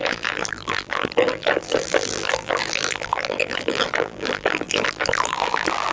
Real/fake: fake